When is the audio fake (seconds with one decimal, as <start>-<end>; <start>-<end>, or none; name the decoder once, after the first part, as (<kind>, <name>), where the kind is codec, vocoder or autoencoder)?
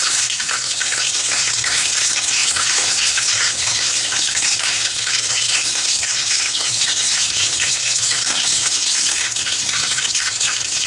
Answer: 0.0-10.9 (codec, SNAC)